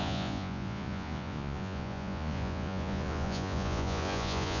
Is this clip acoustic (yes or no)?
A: no